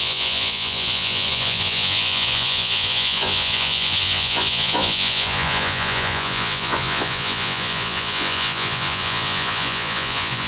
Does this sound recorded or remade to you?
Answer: remade